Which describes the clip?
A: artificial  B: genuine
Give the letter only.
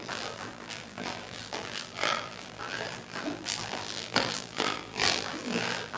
A